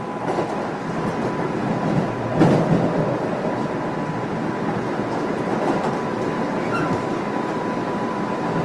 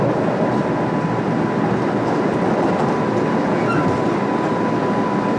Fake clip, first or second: first